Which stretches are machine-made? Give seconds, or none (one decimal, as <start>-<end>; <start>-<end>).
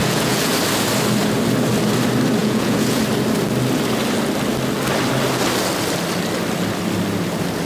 0.0-0.5; 2.4-3.0